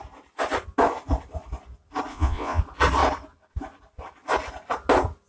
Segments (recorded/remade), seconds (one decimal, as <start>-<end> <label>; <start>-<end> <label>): 0.0-2.1 recorded; 2.1-2.6 remade; 2.6-5.3 recorded